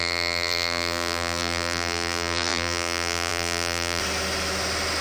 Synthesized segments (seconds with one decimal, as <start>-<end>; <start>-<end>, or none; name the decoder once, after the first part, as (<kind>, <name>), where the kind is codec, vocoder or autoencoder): 0.0-4.0 (vocoder, BigVGAN v2)